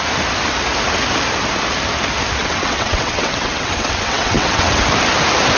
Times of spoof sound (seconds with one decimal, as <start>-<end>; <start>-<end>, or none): 2.4-4.8